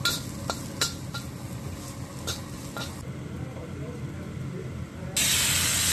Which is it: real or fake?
real